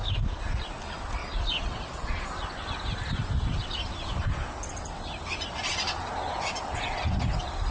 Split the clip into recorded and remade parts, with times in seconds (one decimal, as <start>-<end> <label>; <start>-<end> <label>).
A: 0.0-1.2 recorded; 1.2-2.2 remade; 2.2-7.7 recorded

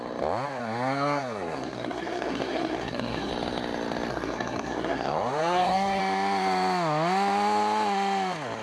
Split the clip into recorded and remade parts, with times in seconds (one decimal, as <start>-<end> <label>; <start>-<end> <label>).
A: 0.0-0.6 recorded; 0.6-3.3 remade; 3.3-4.1 recorded; 4.1-6.0 remade; 6.0-8.6 recorded

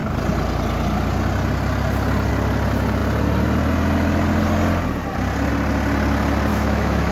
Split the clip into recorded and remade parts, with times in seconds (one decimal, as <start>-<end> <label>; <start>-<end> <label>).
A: 0.0-6.5 recorded; 6.5-7.1 remade

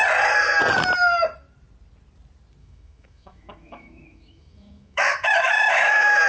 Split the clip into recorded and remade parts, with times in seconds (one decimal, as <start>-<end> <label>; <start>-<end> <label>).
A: 0.0-2.6 recorded; 2.6-6.3 remade

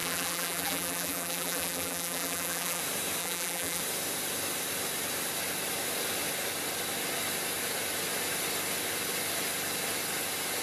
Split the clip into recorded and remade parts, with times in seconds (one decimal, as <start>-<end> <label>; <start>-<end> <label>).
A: 0.0-2.8 remade; 2.8-3.2 recorded; 3.2-3.8 remade; 3.8-10.6 recorded

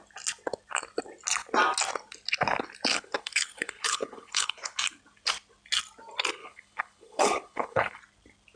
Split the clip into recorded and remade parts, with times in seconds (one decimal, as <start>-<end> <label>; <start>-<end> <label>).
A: 0.0-2.9 recorded; 2.9-4.8 remade; 4.8-6.4 recorded; 6.4-8.0 remade; 8.0-8.6 recorded

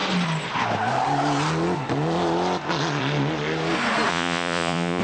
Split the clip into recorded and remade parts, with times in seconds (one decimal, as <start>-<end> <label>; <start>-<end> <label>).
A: 0.0-4.1 recorded; 4.1-5.0 remade

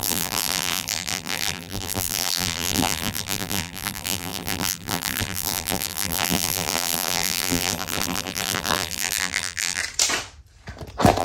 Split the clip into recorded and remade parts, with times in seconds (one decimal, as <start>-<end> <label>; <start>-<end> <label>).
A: 0.0-9.8 remade; 9.8-11.2 recorded